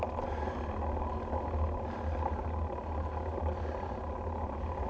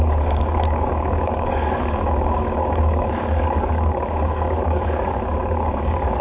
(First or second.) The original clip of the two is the first